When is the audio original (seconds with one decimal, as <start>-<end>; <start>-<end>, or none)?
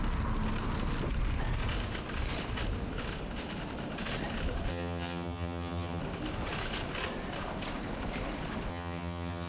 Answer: 0.0-4.7; 6.0-8.7